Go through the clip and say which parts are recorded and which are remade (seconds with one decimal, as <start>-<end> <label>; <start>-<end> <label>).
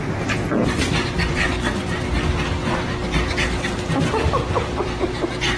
0.0-5.6 recorded